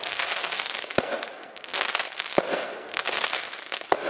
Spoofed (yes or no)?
yes